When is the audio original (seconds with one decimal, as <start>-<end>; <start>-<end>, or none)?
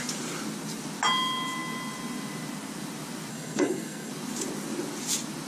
0.0-3.3; 4.1-5.5